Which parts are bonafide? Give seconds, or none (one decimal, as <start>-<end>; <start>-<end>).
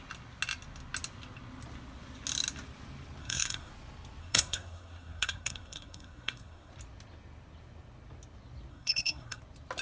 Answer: 0.0-3.2; 3.7-4.2; 6.7-8.7; 9.4-9.8